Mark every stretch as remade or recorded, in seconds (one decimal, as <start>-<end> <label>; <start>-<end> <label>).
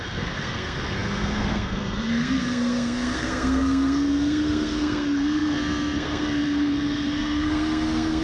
0.0-8.2 remade